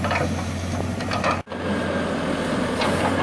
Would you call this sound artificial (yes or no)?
no